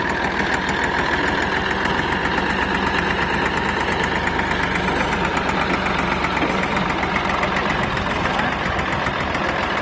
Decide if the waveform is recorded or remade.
recorded